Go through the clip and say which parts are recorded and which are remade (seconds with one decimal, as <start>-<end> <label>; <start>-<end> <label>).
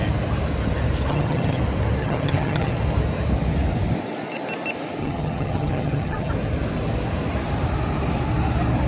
0.0-1.1 recorded; 1.1-1.6 remade; 1.6-2.0 recorded; 2.0-2.7 remade; 2.7-5.0 recorded; 5.0-6.3 remade; 6.3-8.9 recorded